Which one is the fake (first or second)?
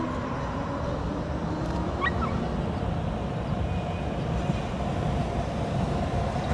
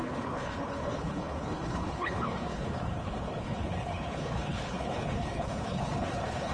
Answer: second